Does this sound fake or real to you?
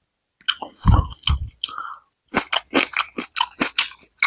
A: real